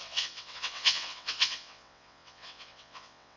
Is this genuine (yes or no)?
no